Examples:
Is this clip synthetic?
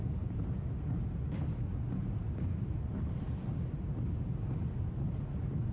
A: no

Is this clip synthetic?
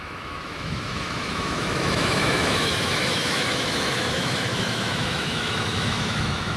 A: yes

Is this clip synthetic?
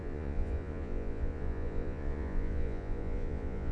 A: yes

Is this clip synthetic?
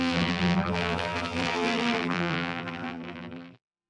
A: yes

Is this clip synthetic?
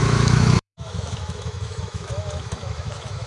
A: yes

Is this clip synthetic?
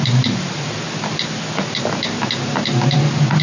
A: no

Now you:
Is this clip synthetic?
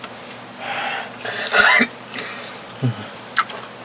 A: no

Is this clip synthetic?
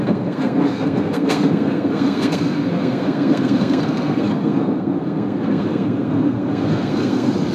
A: yes